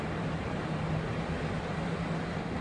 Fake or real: real